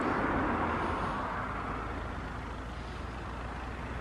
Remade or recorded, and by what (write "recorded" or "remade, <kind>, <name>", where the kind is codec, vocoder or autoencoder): recorded